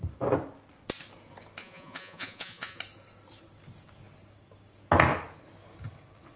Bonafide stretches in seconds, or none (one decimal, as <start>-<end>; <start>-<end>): 0.0-1.6; 2.8-6.4